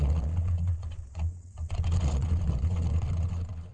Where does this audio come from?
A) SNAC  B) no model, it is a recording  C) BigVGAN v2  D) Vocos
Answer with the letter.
D